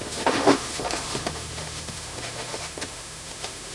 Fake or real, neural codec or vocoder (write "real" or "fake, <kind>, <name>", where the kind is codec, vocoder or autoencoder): fake, autoencoder, DAC-VAE